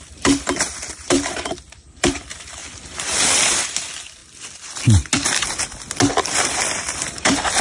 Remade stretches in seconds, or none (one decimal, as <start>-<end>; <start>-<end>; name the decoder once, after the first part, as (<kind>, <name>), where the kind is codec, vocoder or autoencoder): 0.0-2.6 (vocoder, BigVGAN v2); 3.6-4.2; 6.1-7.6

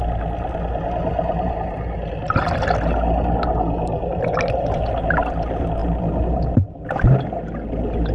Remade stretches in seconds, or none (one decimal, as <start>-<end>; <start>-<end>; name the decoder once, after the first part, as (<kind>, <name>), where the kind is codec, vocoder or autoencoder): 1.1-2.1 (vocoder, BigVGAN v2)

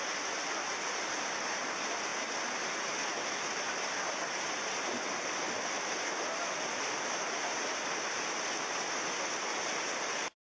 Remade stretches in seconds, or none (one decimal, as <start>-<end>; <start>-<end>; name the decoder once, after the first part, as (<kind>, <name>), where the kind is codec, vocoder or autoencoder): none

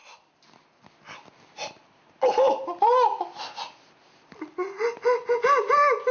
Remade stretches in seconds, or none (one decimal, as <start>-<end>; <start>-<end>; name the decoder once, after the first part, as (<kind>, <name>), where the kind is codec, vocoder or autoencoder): none

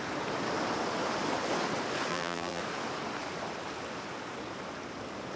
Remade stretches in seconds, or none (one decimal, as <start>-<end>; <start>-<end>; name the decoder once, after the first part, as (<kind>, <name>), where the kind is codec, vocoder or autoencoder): 2.1-2.6 (vocoder, BigVGAN v2)

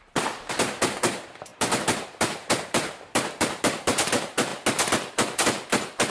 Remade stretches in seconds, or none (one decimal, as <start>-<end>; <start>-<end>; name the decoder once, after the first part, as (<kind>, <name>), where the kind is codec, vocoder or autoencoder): 0.0-4.5 (vocoder, BigVGAN v2)

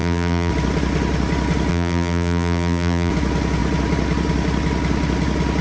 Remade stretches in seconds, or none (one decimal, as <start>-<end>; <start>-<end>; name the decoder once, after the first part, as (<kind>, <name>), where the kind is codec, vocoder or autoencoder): 0.0-0.5 (vocoder, BigVGAN v2); 1.7-3.1